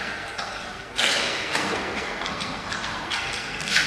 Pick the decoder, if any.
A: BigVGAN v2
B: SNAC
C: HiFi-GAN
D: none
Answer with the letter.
B